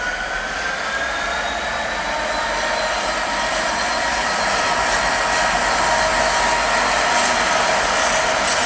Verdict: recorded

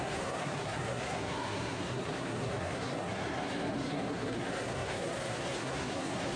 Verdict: remade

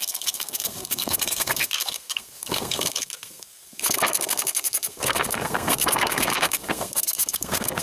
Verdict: remade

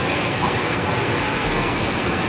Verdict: remade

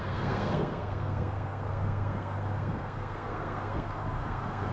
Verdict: remade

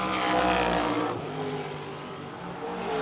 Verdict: recorded